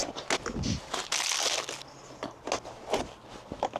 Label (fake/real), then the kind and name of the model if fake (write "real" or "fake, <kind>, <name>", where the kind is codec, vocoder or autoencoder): real